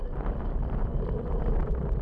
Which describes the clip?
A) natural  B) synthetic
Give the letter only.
A